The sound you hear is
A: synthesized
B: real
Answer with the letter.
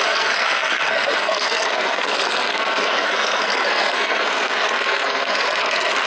A